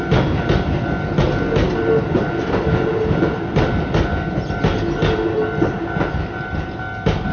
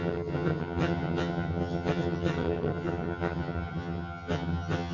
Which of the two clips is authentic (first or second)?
first